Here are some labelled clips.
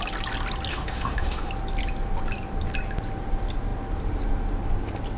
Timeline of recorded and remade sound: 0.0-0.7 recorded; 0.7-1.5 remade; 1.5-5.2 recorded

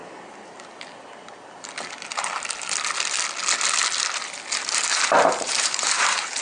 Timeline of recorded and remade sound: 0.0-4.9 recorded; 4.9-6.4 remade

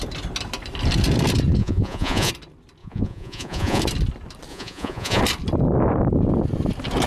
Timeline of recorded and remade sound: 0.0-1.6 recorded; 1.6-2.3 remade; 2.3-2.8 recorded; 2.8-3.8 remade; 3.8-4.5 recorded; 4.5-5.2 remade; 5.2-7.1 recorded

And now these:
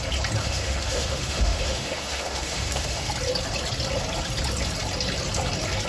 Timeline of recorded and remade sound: 0.0-0.4 recorded; 0.4-3.1 remade; 3.1-5.9 recorded